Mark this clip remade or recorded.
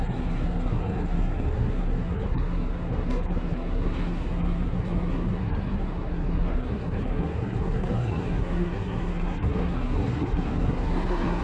remade